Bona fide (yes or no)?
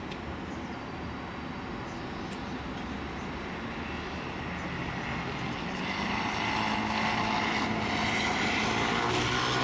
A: yes